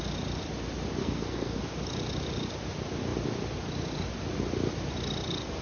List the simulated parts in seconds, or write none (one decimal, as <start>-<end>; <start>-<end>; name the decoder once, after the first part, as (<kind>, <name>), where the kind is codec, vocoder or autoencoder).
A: 1.0-1.6 (codec, SNAC)